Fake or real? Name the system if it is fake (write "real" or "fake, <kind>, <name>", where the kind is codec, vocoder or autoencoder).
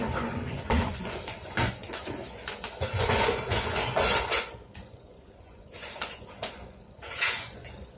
fake, vocoder, Vocos